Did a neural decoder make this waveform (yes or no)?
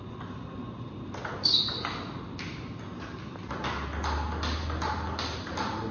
no